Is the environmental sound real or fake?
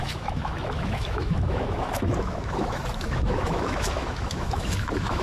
fake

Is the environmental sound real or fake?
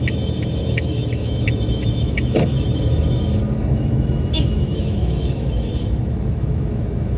fake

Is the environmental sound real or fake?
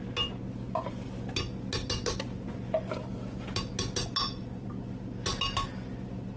real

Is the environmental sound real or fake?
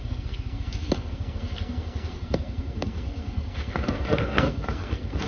fake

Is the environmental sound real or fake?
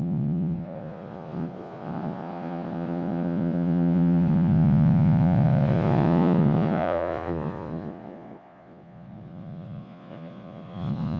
fake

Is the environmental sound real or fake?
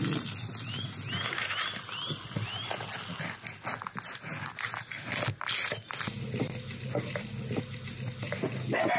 real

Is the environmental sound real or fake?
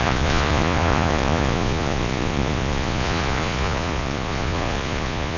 fake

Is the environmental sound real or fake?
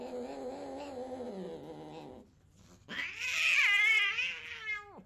real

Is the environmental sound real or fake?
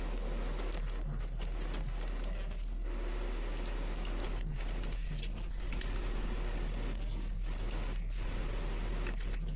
real